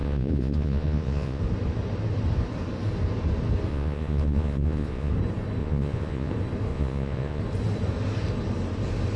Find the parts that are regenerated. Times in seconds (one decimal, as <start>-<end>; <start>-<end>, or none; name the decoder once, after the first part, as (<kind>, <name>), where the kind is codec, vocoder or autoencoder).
0.0-1.4 (vocoder, Vocos); 3.7-5.1; 5.6-6.3; 6.7-7.4